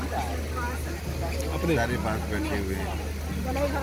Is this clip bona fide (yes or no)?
yes